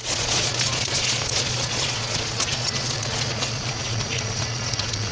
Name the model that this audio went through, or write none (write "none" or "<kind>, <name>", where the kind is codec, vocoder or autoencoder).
vocoder, Vocos